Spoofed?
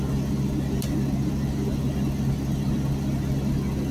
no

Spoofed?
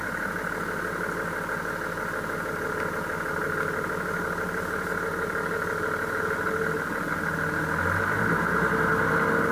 no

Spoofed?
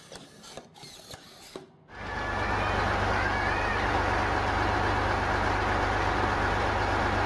no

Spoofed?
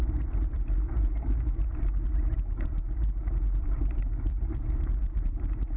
yes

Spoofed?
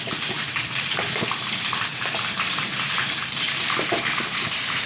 yes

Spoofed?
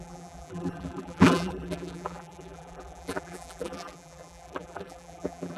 yes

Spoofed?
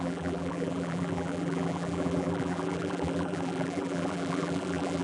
yes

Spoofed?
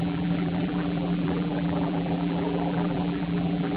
yes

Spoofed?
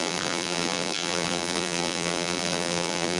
yes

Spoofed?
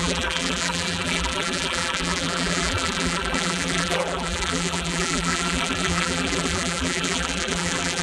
yes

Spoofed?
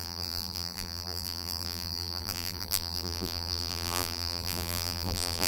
yes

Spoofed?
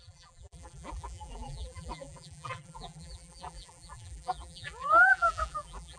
yes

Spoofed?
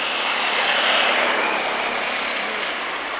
yes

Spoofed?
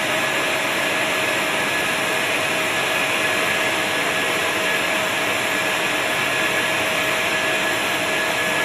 no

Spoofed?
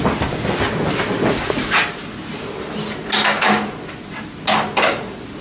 no